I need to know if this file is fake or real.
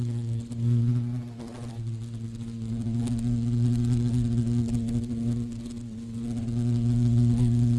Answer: real